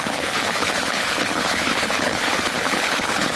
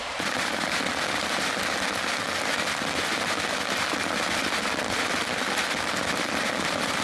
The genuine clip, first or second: second